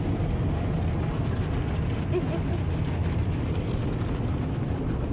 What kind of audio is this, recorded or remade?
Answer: recorded